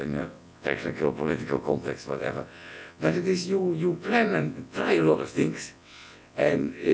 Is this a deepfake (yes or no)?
yes